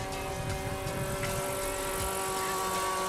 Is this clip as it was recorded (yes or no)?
yes